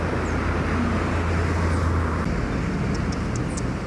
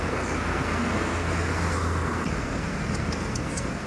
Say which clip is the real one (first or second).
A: first